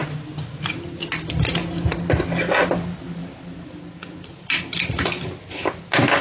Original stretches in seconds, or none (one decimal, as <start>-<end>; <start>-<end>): 0.0-6.2